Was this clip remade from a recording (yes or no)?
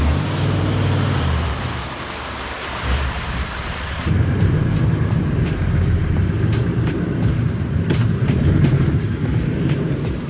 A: yes